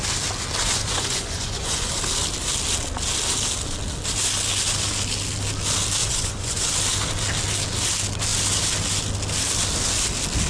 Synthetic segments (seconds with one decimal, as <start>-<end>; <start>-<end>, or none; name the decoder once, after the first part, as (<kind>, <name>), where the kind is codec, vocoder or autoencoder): 0.6-1.9 (vocoder, Vocos); 6.0-6.7